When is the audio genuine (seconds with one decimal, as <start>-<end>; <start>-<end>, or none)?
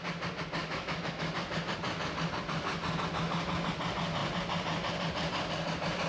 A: 0.0-0.6; 1.3-6.1